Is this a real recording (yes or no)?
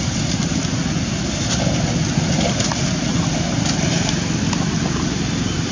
yes